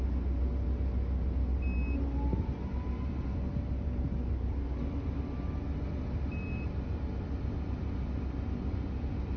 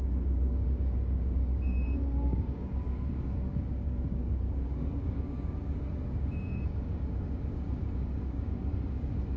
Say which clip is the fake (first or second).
second